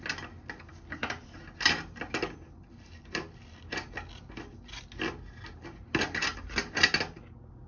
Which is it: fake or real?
real